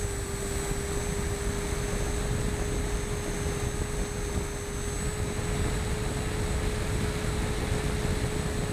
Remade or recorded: recorded